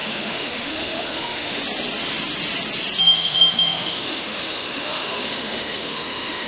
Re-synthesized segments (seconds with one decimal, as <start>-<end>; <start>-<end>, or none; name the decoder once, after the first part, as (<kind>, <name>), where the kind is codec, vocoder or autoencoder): 0.0-1.6 (autoencoder, DAC-VAE); 3.0-6.5